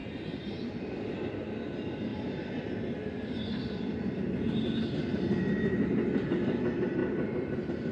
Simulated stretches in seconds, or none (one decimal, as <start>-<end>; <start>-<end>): 0.0-0.6; 2.1-4.4